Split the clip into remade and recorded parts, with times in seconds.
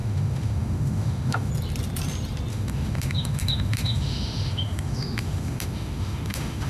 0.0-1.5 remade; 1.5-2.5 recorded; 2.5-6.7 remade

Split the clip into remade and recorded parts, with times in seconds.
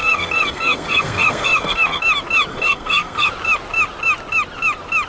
0.0-2.0 remade; 2.0-2.5 recorded; 2.5-3.3 remade; 3.3-5.1 recorded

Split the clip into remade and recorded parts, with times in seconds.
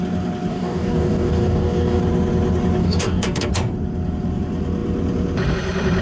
0.0-0.5 recorded; 0.5-2.0 remade; 2.0-2.8 recorded; 2.8-3.5 remade; 3.5-6.0 recorded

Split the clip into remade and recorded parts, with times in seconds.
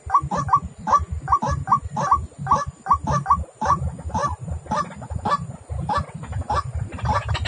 0.0-4.2 recorded; 4.2-4.9 remade; 4.9-7.5 recorded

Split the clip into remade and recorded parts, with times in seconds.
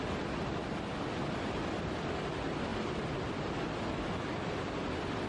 0.0-5.3 recorded